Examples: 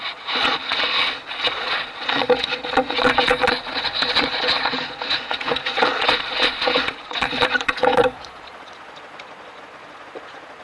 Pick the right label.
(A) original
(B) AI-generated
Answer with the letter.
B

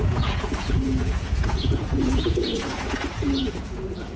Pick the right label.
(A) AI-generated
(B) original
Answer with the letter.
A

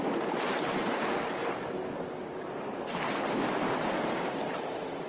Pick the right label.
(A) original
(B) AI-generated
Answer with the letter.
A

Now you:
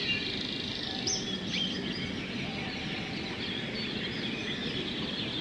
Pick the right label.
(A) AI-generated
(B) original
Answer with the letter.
B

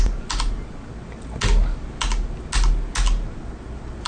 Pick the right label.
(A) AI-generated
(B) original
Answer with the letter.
B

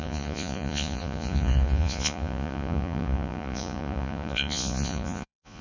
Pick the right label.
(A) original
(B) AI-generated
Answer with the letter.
B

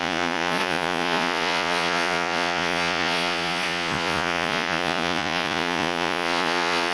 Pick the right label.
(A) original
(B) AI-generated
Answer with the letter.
B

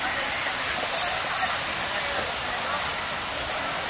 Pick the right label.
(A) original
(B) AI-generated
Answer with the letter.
A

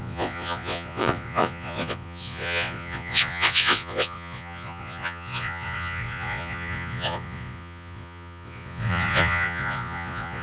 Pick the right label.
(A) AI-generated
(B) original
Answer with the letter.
A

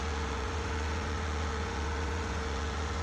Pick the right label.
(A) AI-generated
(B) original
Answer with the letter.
A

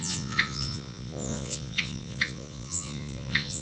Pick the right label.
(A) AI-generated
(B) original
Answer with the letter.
A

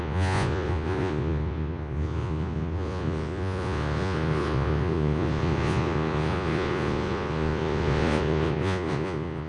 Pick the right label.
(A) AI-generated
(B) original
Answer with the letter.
A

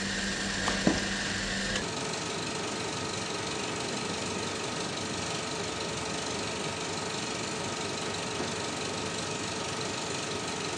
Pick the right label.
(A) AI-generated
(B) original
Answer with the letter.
B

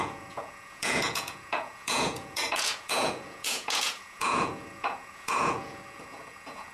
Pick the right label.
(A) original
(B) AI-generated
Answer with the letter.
B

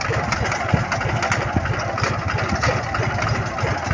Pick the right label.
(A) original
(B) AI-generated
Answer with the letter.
A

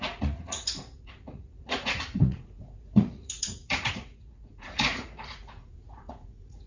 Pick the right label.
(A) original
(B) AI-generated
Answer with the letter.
B